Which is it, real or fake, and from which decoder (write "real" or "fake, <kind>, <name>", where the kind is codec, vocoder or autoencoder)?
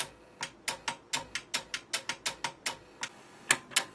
real